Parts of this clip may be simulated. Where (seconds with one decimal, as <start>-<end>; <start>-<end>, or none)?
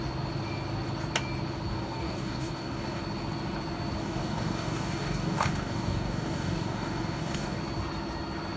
1.7-3.0; 4.0-7.6